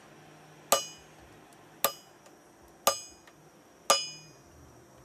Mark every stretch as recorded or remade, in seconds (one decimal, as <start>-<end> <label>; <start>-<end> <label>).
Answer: 0.0-5.0 recorded